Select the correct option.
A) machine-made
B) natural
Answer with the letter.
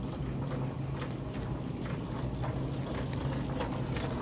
B